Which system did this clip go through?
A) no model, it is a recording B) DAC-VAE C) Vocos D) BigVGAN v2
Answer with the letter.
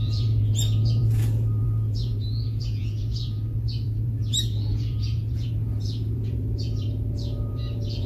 C